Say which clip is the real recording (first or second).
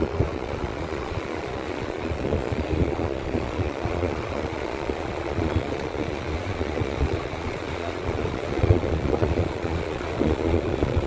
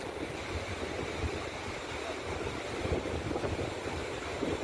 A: second